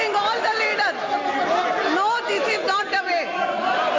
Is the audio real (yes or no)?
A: no